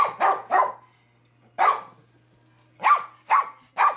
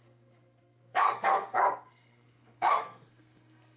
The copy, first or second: second